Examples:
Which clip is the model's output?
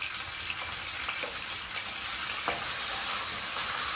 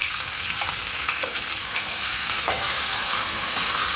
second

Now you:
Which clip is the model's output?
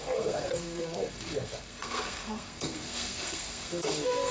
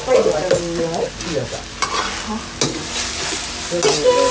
first